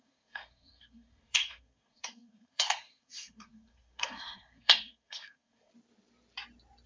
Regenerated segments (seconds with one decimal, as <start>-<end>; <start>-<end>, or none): 0.0-5.7